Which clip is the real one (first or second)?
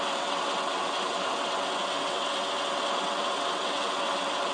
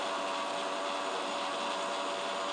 second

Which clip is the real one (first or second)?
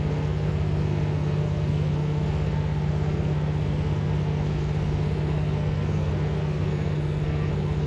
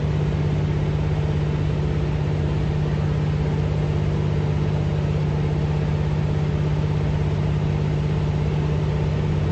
second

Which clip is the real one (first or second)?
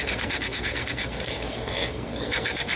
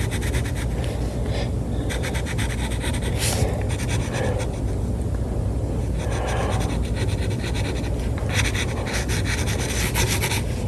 second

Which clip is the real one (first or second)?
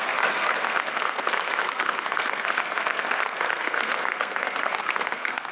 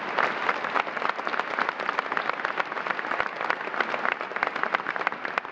second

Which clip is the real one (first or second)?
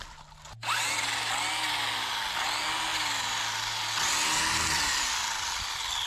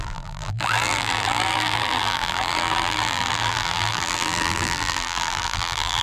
first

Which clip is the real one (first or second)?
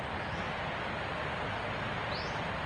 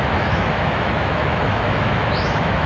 first